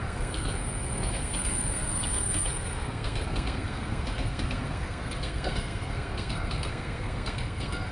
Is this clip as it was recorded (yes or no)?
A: no